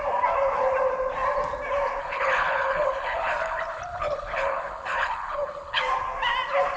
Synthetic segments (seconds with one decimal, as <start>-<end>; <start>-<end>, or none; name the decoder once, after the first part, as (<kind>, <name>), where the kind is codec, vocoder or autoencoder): 2.0-5.8 (codec, HILCodec)